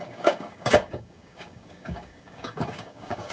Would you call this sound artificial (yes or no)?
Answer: yes